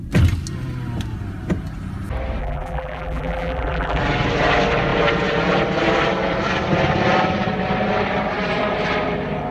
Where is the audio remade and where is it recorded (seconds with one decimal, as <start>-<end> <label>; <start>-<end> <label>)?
0.0-2.4 recorded; 2.4-4.0 remade; 4.0-9.5 recorded